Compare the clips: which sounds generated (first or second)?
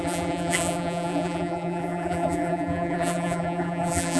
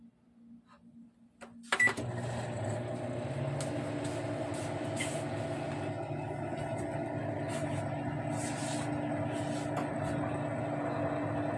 first